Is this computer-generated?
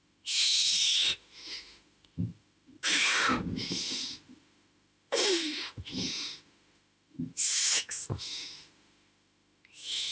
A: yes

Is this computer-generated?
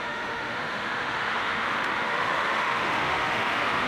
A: yes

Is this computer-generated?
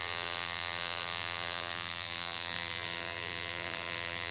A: yes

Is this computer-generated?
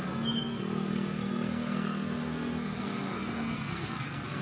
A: yes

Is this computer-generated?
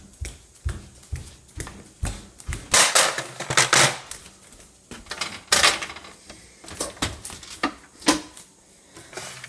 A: no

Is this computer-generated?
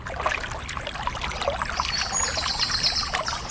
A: no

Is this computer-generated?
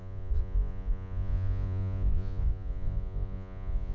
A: yes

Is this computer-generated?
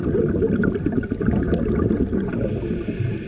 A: no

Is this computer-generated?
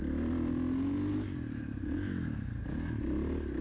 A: no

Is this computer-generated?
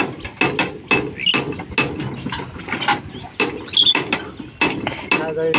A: no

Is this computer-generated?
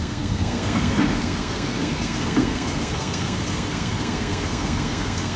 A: yes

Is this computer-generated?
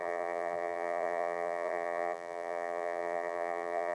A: yes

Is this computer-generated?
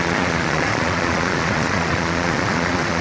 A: yes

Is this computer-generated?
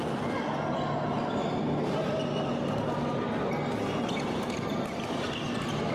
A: no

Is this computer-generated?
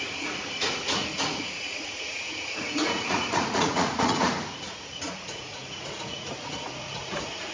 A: yes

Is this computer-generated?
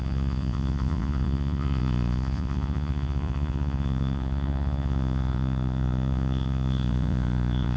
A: yes